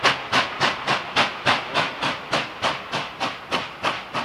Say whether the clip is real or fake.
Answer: real